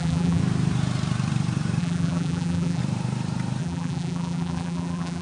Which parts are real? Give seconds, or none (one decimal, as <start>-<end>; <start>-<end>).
0.4-1.8; 2.8-3.6